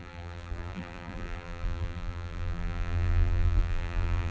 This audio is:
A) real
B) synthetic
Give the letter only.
B